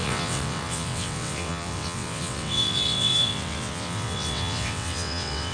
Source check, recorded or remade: remade